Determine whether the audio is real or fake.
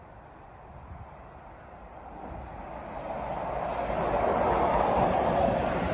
real